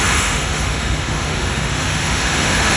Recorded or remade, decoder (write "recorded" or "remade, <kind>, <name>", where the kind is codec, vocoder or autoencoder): remade, autoencoder, DAC-VAE